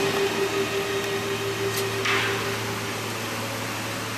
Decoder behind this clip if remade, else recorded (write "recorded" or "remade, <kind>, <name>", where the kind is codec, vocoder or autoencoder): recorded